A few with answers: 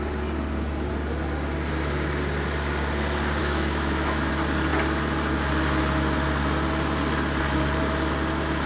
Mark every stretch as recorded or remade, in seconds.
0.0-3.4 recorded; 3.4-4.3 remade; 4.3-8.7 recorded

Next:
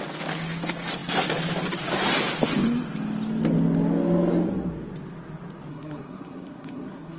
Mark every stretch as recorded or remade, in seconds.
0.0-5.7 recorded; 5.7-7.2 remade